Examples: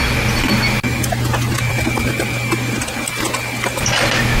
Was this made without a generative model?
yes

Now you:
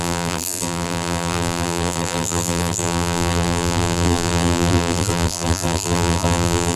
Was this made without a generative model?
no